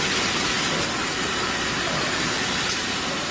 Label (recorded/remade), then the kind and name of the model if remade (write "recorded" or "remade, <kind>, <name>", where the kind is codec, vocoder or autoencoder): remade, vocoder, BigVGAN v2